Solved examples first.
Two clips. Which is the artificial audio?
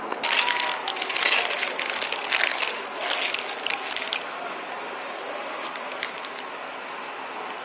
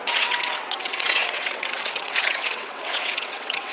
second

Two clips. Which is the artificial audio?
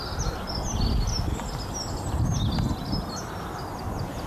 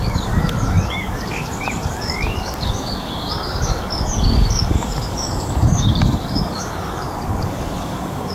second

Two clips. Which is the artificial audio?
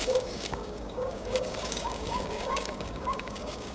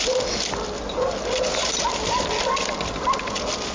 first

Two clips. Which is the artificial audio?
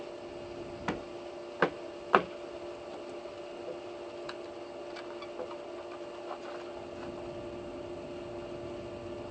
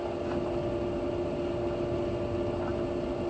second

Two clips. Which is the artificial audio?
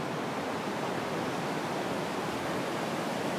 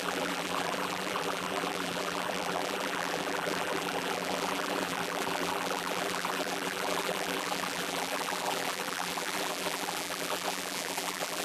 second